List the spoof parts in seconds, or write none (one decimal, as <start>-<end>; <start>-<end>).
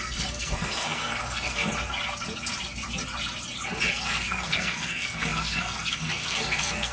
0.0-1.7; 3.9-6.9